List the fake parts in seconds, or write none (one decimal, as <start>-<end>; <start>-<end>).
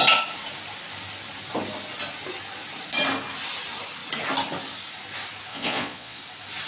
5.5-6.2